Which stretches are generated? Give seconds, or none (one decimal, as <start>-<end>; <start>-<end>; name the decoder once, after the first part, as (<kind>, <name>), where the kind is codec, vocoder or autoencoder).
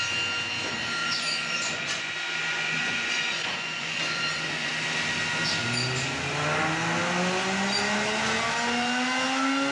1.0-2.1 (vocoder, Vocos); 2.5-4.7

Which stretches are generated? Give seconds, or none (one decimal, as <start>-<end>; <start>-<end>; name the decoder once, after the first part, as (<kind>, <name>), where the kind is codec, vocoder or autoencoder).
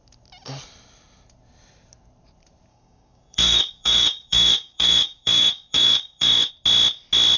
2.7-6.5 (codec, DAC)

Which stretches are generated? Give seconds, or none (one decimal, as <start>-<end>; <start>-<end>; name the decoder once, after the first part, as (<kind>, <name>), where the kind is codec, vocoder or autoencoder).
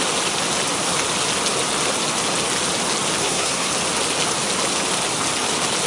3.2-3.7 (codec, SNAC)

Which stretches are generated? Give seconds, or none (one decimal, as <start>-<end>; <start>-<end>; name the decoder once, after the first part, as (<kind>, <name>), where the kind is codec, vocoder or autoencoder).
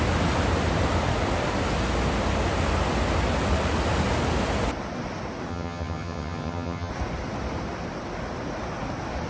5.5-6.9 (vocoder, HiFi-GAN)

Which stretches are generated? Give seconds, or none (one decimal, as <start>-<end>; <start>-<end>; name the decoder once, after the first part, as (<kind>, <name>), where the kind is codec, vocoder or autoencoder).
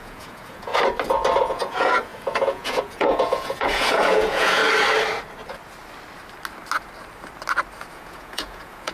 0.0-0.7 (vocoder, Vocos); 1.4-4.6; 7.9-8.9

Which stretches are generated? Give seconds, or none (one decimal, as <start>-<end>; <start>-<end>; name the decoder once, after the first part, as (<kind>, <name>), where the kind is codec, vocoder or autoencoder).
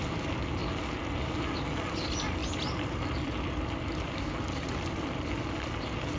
2.4-5.5 (vocoder, BigVGAN v2)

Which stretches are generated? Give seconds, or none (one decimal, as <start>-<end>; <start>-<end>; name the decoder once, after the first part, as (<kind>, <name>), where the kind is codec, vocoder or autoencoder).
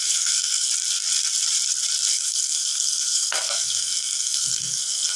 0.0-0.7 (codec, SNAC); 2.1-5.2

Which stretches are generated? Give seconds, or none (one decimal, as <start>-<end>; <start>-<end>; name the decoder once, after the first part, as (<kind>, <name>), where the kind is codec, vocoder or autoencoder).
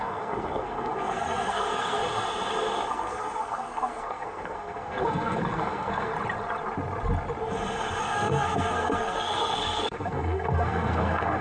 0.0-2.0 (codec, SNAC); 2.9-6.1; 8.0-11.4